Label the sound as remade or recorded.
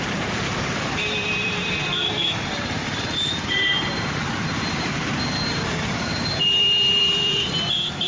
remade